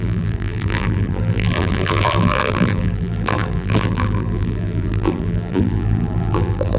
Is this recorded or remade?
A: remade